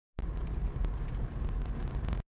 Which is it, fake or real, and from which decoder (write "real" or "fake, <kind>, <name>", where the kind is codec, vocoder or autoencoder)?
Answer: real